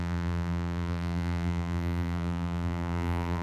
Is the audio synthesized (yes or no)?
yes